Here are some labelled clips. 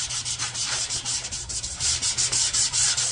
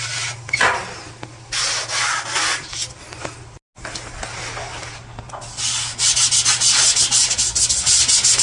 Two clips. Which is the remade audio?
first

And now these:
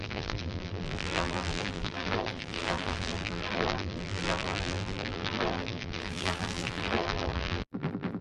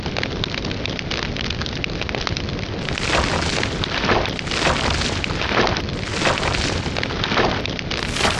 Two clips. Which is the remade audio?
first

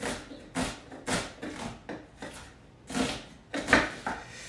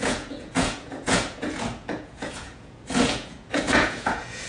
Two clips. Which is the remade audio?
second